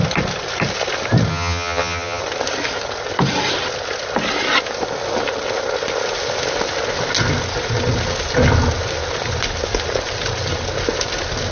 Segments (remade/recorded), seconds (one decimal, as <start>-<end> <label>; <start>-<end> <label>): 0.0-1.3 recorded; 1.3-2.2 remade; 2.2-11.5 recorded